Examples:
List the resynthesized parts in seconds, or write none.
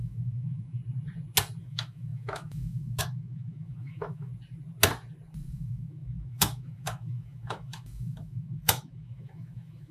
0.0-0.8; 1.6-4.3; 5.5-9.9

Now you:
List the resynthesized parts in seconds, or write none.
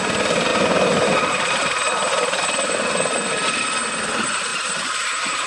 none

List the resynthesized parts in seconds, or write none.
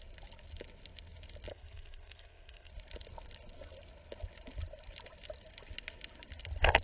1.5-2.7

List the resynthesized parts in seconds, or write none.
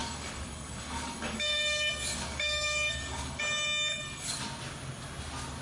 0.0-3.4; 3.9-4.4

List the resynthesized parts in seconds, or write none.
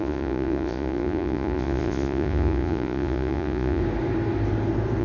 0.0-3.8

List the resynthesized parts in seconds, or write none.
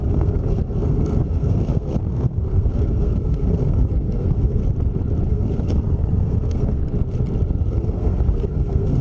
0.0-4.6; 5.3-6.8; 7.7-9.0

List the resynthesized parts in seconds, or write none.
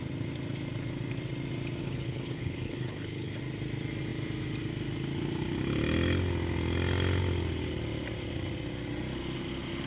1.8-3.4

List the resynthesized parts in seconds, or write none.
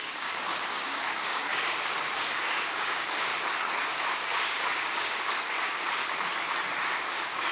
0.0-3.3; 3.8-6.0; 6.8-7.5